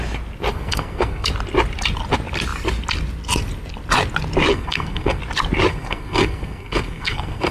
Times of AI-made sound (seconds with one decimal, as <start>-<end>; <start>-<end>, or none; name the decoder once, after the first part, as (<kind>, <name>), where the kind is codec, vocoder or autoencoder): 0.5-1.3 (codec, SNAC); 4.5-5.2; 5.7-7.5